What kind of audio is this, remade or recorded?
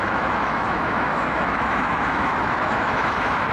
remade